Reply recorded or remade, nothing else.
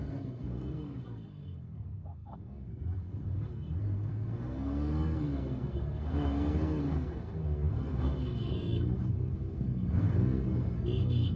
remade